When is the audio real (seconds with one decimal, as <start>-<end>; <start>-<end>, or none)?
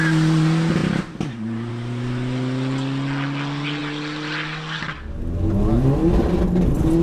0.0-0.8; 1.7-7.0